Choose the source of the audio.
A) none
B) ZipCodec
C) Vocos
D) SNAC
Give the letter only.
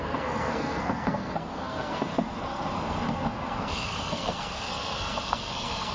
D